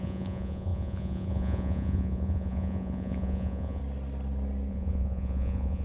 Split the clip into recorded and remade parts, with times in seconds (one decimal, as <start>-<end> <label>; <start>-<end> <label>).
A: 0.0-3.8 remade; 3.8-4.7 recorded; 4.7-5.8 remade